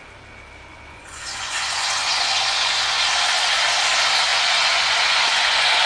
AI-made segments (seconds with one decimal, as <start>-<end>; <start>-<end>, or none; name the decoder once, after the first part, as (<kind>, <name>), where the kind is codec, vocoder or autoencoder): 0.7-3.1 (vocoder, Vocos); 4.3-5.9